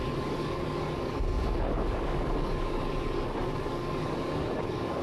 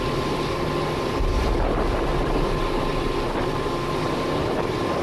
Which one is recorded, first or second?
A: second